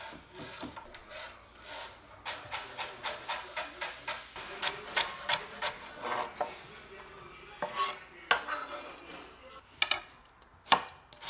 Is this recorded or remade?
recorded